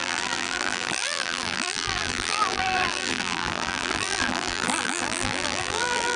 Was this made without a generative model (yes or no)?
no